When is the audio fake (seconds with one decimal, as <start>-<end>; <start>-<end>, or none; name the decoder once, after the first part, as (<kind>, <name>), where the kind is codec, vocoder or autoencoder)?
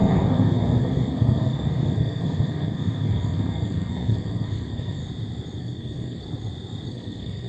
0.0-5.0 (codec, SNAC); 5.6-6.2; 6.9-7.5